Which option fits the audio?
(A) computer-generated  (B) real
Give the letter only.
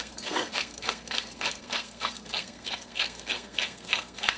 A